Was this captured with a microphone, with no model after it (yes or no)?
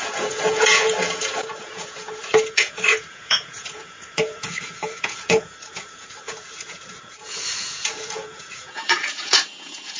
no